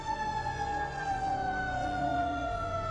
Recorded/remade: remade